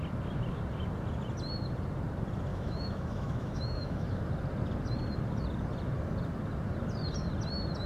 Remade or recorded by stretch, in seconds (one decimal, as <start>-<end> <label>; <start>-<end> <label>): 0.0-2.5 recorded; 2.5-4.2 remade; 4.2-7.9 recorded